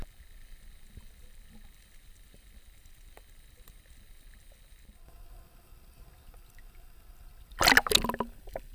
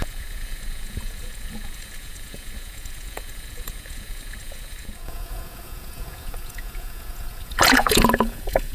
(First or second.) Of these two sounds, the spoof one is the second